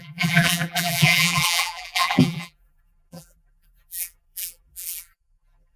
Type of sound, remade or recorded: remade